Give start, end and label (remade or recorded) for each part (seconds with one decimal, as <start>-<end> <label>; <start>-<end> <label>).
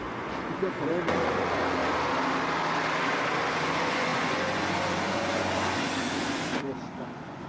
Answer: 0.0-1.8 remade; 1.8-3.5 recorded; 3.5-7.5 remade